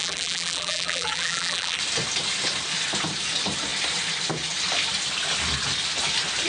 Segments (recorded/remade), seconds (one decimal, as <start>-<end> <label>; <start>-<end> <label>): 0.0-1.8 remade; 1.8-6.5 recorded